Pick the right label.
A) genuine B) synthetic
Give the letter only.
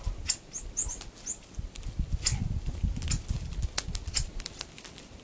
A